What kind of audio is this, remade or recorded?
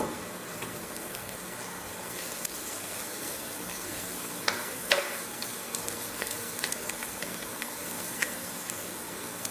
remade